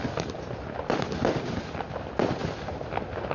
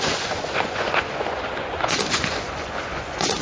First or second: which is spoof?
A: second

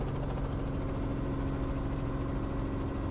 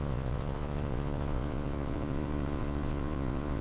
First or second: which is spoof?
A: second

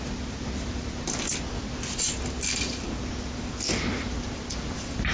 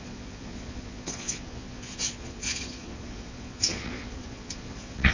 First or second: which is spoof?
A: second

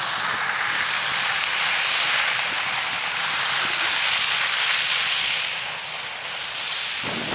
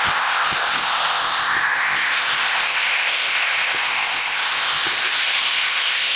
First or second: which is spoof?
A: second